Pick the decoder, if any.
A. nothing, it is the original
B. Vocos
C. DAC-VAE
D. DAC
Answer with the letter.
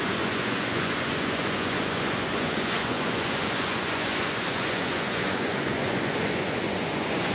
B